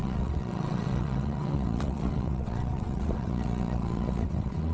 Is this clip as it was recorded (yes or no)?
no